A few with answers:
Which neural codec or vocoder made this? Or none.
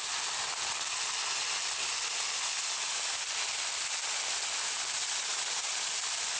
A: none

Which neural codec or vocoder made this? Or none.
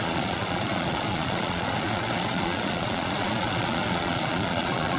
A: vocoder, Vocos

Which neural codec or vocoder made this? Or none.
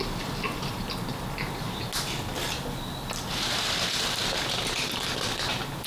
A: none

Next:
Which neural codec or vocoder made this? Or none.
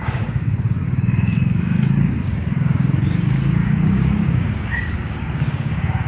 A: codec, DAC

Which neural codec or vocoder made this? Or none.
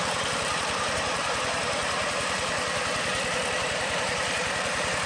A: vocoder, BigVGAN v2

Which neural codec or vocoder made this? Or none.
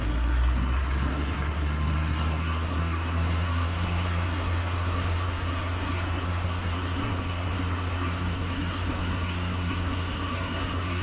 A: codec, SNAC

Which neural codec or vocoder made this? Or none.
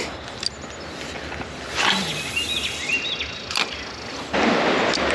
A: none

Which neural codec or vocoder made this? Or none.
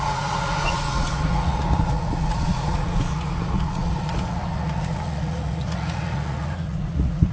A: vocoder, Vocos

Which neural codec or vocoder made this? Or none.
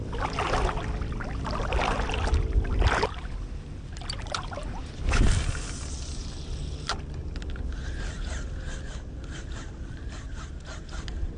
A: none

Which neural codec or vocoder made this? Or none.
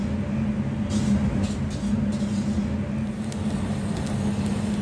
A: none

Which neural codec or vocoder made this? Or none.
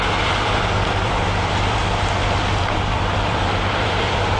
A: vocoder, BigVGAN v2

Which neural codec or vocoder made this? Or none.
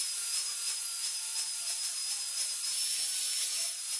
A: none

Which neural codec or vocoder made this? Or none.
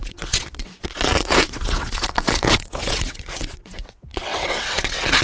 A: vocoder, WaveNeXt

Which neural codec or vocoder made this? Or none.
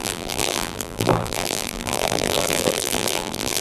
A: vocoder, BigVGAN v2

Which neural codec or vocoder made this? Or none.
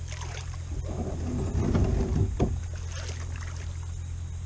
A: none